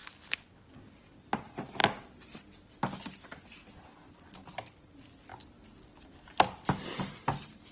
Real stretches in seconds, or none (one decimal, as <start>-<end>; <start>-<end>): 0.0-7.7